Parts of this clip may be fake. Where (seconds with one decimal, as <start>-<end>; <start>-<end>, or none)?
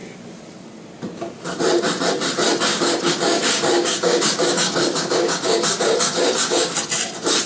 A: 2.7-6.7